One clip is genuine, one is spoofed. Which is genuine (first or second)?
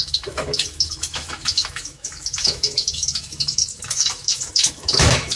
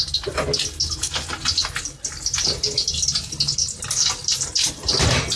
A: second